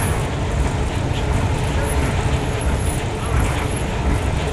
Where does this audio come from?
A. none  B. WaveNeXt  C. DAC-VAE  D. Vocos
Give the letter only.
A